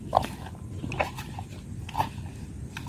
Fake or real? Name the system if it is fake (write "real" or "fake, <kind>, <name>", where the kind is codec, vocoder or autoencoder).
real